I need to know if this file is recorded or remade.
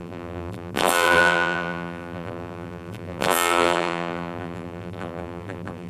remade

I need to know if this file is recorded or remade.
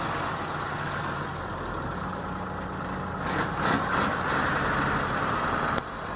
recorded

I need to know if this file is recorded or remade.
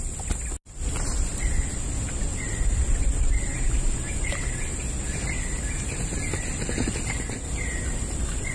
recorded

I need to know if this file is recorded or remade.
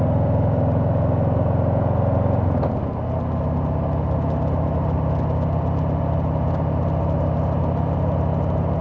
recorded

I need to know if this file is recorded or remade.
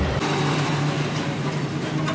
recorded